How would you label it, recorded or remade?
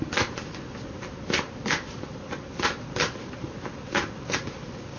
recorded